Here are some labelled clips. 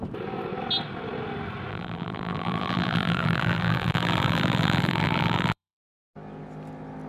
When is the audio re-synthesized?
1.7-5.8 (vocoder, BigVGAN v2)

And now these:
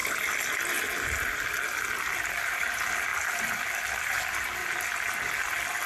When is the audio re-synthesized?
0.7-4.6 (vocoder, BigVGAN v2); 5.4-5.9

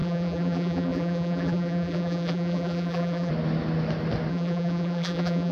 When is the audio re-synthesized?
0.0-3.3 (vocoder, BigVGAN v2); 4.3-5.5

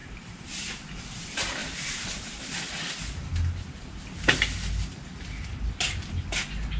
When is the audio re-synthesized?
0.0-0.6 (vocoder, BigVGAN v2); 1.6-2.4

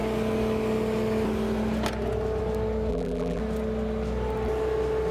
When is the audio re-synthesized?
2.9-3.4 (vocoder, BigVGAN v2)

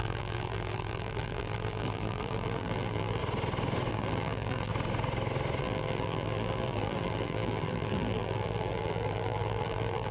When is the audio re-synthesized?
0.0-3.2 (vocoder, BigVGAN v2); 3.9-4.7; 5.6-10.1

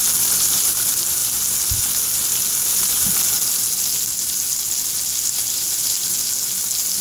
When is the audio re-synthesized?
none

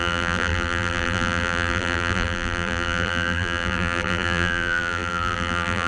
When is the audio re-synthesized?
0.0-5.9 (vocoder, BigVGAN v2)